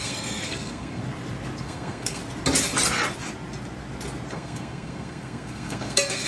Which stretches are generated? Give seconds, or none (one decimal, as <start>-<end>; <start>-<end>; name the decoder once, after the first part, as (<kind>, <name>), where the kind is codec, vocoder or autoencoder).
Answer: 0.0-1.0 (codec, SNAC); 1.6-2.2; 4.3-6.3